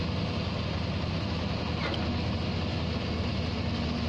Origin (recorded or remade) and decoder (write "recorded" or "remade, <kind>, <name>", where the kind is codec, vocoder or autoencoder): recorded